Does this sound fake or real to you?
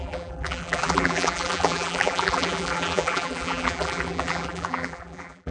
fake